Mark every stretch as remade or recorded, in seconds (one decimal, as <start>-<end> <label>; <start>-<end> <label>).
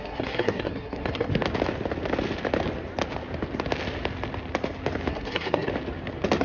0.0-1.3 remade; 1.3-5.1 recorded; 5.1-5.7 remade; 5.7-6.4 recorded